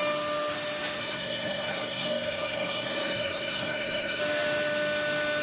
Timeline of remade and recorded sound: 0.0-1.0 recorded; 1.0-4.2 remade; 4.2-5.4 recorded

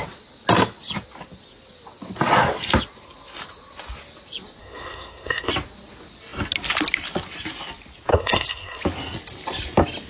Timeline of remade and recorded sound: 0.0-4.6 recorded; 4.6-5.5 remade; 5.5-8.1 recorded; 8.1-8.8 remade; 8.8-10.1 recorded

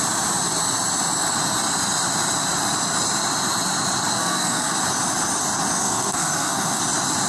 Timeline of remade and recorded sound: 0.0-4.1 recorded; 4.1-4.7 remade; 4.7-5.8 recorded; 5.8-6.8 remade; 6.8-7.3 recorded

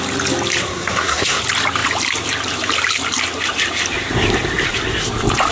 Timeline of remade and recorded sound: 0.0-0.6 recorded; 0.6-1.4 remade; 1.4-5.5 recorded

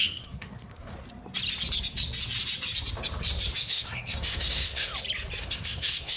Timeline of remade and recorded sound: 0.0-0.9 remade; 0.9-3.7 recorded; 3.7-4.9 remade; 4.9-5.4 recorded; 5.4-6.2 remade